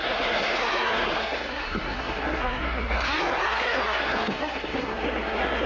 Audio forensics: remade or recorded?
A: remade